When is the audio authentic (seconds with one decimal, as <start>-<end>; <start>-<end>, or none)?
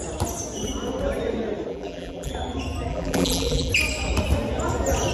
0.0-1.7; 2.3-2.9; 3.7-5.1